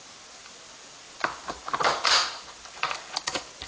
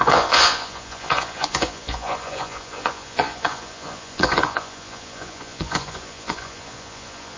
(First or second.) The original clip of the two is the first